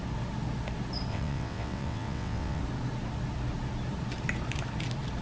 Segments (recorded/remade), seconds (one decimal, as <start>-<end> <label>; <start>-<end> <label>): 0.0-1.1 recorded; 1.1-2.6 remade; 2.6-5.2 recorded